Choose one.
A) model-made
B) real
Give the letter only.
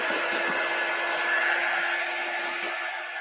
B